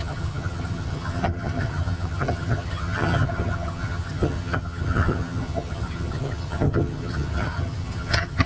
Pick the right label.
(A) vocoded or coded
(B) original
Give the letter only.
A